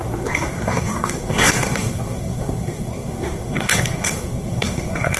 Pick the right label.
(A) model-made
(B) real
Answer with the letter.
A